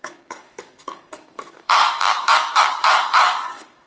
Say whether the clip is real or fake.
fake